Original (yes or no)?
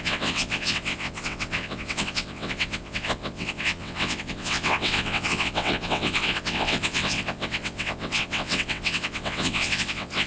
no